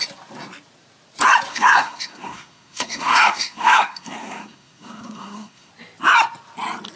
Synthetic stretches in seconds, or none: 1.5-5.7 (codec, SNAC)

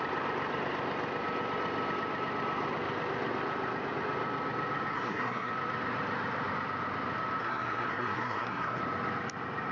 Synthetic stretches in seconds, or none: 4.9-5.5 (codec, SNAC); 7.4-8.8

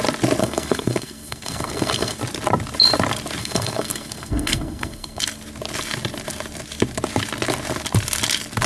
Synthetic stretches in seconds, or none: 0.4-2.2 (codec, SNAC); 3.4-5.2

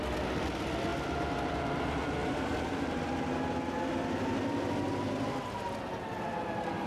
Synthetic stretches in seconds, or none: none